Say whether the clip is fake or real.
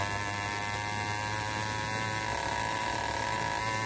real